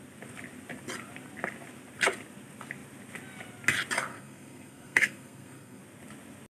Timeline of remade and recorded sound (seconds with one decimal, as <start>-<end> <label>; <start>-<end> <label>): 0.0-4.1 recorded; 4.1-5.8 remade; 5.8-6.5 recorded